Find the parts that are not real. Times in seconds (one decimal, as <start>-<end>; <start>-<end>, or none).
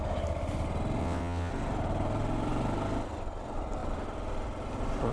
1.0-1.5